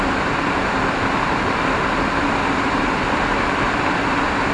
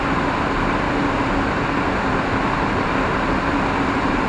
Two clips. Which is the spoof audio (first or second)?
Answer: first